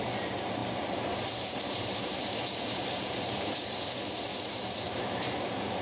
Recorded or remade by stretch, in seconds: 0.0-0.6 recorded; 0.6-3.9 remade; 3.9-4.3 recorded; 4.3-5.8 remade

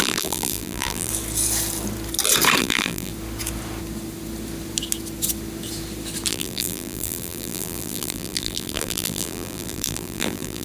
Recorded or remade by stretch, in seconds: 0.0-1.1 remade; 1.1-2.6 recorded; 2.6-3.1 remade; 3.1-6.3 recorded; 6.3-10.6 remade

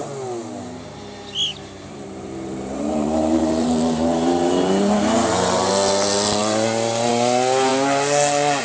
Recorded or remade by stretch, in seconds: 0.0-1.5 recorded; 1.5-5.7 remade; 5.7-8.6 recorded